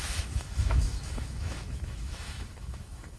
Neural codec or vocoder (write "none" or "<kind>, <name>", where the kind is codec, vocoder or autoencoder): autoencoder, DAC-VAE